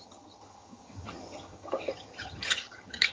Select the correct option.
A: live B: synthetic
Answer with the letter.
B